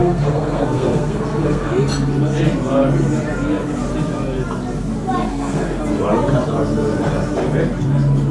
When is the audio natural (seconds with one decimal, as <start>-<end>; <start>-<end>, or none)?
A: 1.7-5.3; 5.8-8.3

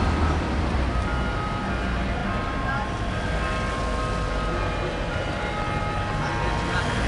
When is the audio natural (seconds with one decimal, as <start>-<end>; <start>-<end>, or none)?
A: 0.0-7.1

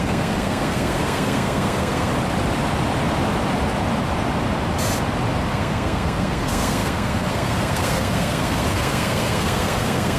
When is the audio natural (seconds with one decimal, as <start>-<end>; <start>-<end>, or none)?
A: 2.1-5.5

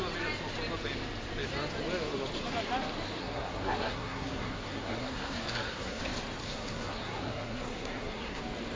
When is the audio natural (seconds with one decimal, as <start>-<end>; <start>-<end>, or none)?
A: 0.0-3.2; 6.0-6.4; 8.4-8.8

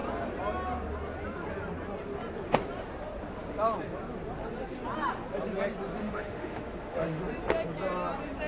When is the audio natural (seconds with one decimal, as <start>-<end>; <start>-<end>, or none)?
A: 0.0-6.0; 7.2-8.5

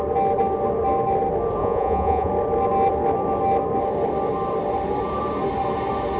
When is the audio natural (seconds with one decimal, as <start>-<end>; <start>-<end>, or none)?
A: 0.0-1.6; 2.3-6.2

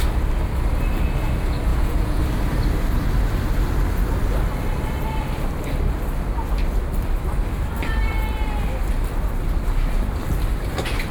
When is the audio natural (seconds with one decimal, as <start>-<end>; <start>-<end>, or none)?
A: 0.0-1.7; 2.2-11.1

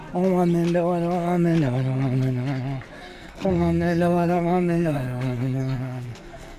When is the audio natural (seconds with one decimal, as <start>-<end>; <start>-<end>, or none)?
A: 0.0-3.1